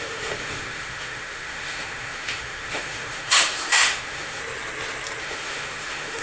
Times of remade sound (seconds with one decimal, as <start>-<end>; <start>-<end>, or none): 0.0-4.4; 5.2-6.2